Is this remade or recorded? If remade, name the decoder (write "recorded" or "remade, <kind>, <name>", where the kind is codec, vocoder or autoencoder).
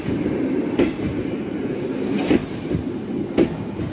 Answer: recorded